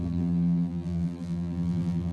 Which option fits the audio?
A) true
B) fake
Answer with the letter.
B